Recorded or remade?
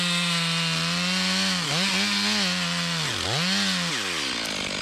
recorded